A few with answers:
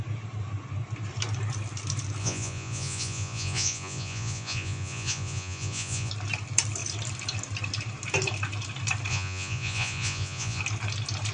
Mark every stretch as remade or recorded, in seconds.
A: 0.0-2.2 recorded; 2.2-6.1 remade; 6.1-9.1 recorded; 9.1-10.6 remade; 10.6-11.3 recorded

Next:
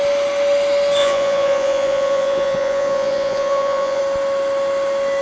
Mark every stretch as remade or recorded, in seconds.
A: 0.0-1.0 recorded; 1.0-4.0 remade; 4.0-5.2 recorded

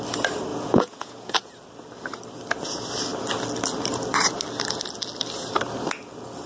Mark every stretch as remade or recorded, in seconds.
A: 0.0-0.5 recorded; 0.5-1.5 remade; 1.5-6.5 recorded